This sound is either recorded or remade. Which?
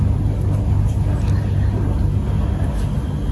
recorded